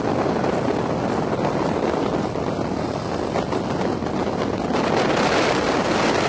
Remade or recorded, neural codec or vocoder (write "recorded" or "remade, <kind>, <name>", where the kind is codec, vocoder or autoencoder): recorded